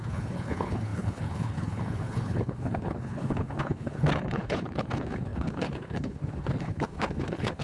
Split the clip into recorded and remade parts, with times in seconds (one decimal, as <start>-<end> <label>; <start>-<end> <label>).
0.0-7.6 remade